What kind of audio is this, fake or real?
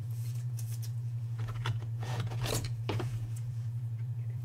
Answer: fake